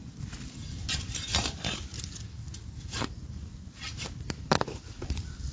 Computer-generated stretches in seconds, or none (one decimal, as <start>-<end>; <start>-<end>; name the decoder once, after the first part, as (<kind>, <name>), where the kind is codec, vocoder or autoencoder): none